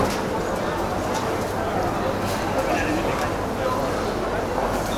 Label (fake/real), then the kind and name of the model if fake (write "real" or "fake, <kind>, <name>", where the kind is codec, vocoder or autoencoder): real